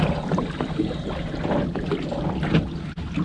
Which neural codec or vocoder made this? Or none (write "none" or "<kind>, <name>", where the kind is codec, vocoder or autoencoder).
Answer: none